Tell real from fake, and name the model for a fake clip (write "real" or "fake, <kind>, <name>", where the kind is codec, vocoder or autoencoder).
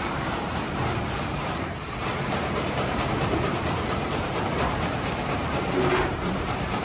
fake, vocoder, BigVGAN v2